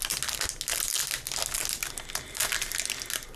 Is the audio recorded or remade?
recorded